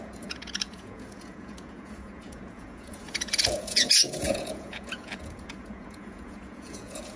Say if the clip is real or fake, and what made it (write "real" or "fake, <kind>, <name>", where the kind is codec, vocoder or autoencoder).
fake, vocoder, Vocos